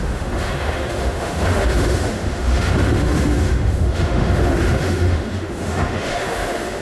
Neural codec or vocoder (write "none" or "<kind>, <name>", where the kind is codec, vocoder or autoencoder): autoencoder, DAC-VAE